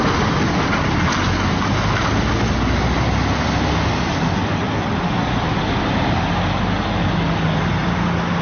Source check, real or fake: real